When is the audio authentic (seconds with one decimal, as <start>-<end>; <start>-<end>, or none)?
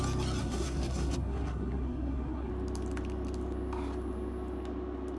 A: 0.0-0.4; 2.5-5.2